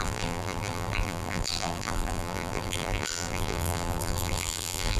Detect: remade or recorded remade